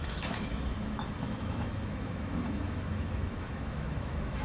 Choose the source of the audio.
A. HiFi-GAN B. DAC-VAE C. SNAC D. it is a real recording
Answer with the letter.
B